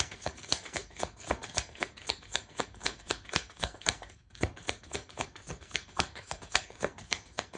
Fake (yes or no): yes